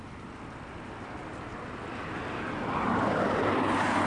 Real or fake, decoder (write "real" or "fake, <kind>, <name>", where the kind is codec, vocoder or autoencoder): real